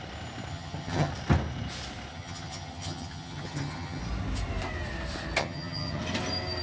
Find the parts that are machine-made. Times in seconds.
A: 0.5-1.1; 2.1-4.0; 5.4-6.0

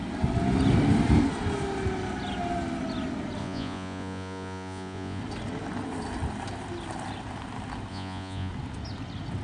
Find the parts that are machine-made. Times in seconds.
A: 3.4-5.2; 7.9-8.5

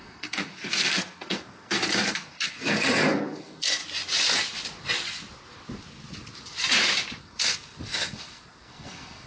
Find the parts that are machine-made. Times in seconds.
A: 0.0-3.8; 7.2-9.3

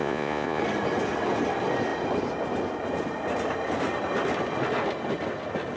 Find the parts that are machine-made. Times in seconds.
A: 0.0-0.6